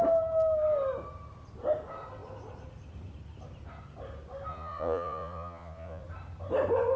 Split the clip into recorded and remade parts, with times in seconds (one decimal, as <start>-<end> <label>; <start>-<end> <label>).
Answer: 0.0-4.5 recorded; 4.5-6.0 remade; 6.0-7.0 recorded